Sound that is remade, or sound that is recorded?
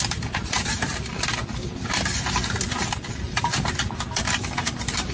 recorded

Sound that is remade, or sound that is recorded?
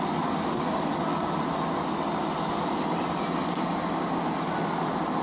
recorded